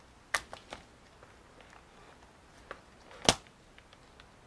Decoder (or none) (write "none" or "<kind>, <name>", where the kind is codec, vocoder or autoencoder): none